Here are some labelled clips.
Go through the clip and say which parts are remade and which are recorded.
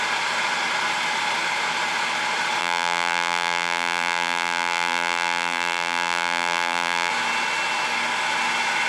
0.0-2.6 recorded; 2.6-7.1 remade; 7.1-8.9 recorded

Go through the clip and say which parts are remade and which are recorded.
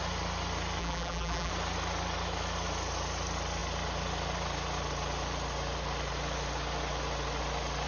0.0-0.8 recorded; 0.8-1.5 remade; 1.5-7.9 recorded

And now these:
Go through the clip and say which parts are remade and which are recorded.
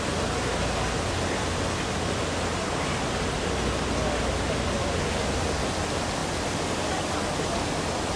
0.0-8.2 recorded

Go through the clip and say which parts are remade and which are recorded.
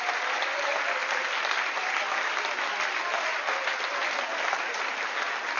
0.0-1.0 recorded; 1.0-2.3 remade; 2.3-4.3 recorded; 4.3-4.9 remade; 4.9-5.6 recorded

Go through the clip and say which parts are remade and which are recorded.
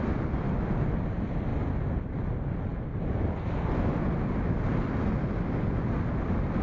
0.0-6.6 recorded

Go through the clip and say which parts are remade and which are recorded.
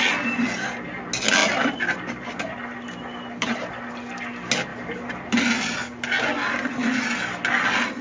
0.0-1.4 recorded; 1.4-3.9 remade; 3.9-4.7 recorded; 4.7-5.4 remade; 5.4-8.0 recorded